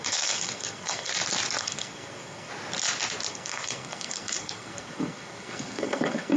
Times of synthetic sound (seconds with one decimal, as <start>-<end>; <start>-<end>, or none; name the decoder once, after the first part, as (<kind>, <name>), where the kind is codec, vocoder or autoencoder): 0.0-1.1 (codec, SNAC); 1.6-2.5; 3.3-6.4